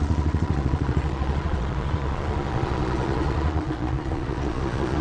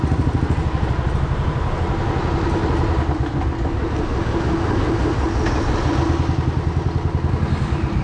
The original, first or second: second